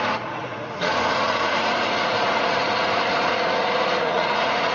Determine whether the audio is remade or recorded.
remade